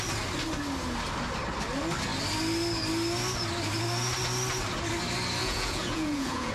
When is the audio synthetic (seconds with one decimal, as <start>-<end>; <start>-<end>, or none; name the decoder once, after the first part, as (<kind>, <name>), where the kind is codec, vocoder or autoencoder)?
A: 5.4-6.5 (vocoder, Vocos)